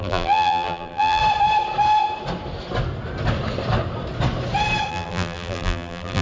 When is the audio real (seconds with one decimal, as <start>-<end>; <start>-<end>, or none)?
1.2-4.9